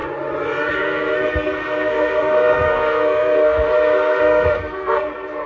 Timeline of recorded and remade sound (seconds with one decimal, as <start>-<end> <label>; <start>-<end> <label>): 0.0-0.7 recorded; 0.7-3.7 remade; 3.7-4.2 recorded; 4.2-5.5 remade